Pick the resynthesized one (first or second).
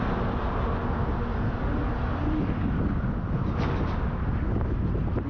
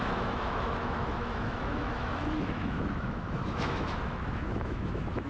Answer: second